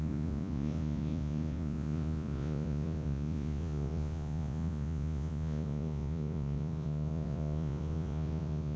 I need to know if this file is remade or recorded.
remade